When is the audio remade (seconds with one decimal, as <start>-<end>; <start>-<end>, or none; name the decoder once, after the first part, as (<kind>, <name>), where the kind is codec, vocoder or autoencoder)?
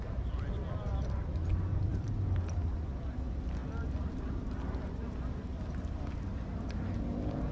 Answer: none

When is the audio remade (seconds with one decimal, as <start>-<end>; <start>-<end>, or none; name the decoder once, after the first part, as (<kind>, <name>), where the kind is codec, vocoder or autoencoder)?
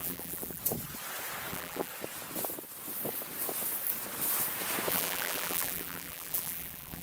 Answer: 0.0-0.6 (vocoder, BigVGAN v2); 1.5-1.9; 4.9-7.0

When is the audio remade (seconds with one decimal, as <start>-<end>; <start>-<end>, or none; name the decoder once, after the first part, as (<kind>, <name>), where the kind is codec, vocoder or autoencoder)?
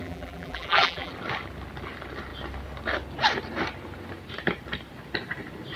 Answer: 0.0-1.1 (vocoder, BigVGAN v2)